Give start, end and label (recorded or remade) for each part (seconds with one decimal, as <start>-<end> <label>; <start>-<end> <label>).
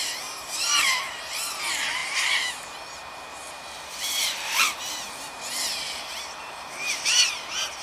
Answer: 0.0-7.8 remade